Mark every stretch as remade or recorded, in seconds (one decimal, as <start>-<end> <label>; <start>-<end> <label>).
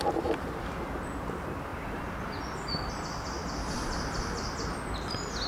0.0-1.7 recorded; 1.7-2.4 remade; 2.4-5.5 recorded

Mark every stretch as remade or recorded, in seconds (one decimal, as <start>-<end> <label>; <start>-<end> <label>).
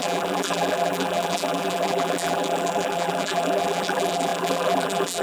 0.0-5.2 remade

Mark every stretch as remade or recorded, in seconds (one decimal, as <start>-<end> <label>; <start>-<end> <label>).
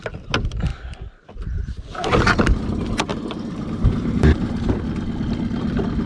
0.0-3.1 recorded; 3.1-4.8 remade; 4.8-6.1 recorded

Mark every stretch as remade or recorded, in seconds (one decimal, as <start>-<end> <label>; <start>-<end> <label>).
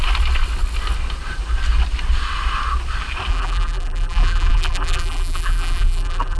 0.0-3.3 recorded; 3.3-6.4 remade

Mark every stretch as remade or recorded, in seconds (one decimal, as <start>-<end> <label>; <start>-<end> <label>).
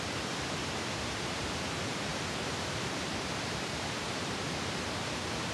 0.0-0.6 recorded; 0.6-1.5 remade; 1.5-2.1 recorded; 2.1-4.5 remade; 4.5-5.5 recorded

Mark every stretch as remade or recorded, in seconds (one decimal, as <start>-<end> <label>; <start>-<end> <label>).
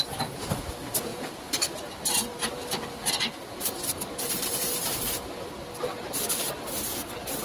0.0-1.1 recorded; 1.1-5.5 remade; 5.5-7.4 recorded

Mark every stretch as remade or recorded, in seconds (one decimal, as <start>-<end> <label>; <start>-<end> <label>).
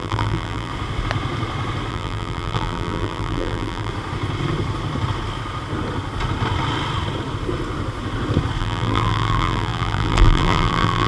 0.0-0.7 remade; 0.7-1.9 recorded; 1.9-3.9 remade; 3.9-8.6 recorded; 8.6-11.1 remade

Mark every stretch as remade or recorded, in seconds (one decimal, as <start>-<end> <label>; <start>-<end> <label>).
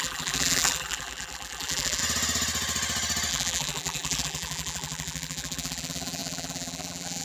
0.0-2.0 remade; 2.0-3.3 recorded; 3.3-7.2 remade